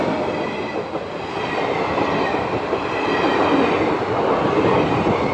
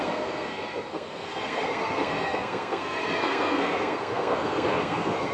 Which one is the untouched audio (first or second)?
first